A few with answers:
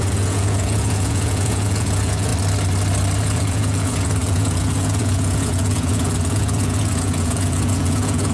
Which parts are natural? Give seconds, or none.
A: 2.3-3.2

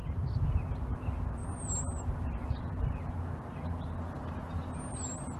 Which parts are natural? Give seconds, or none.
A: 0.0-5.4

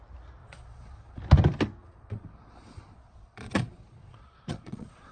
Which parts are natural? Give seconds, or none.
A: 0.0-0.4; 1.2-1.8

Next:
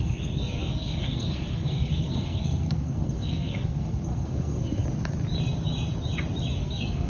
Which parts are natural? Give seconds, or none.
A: 4.8-6.6